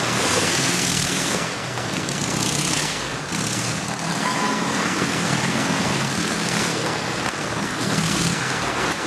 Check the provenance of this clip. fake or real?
fake